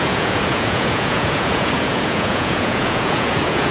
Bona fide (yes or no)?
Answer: no